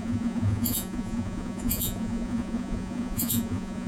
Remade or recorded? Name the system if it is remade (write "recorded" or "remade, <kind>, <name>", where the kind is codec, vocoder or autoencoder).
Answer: remade, vocoder, Vocos